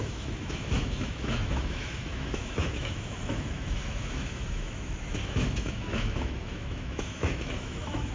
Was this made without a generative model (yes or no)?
no